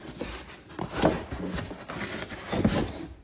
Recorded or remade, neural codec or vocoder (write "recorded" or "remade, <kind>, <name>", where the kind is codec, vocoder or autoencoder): recorded